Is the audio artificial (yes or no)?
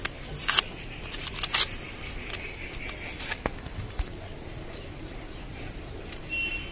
no